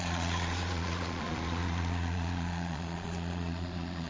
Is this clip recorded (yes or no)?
no